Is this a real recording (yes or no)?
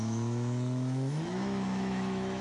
no